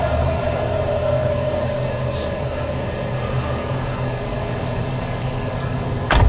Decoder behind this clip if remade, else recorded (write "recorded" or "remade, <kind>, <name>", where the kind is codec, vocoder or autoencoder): remade, codec, DAC